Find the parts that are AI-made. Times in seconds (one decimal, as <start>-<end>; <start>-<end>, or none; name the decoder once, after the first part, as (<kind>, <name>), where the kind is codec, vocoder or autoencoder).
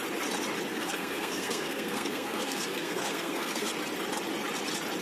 0.7-3.7 (codec, SNAC)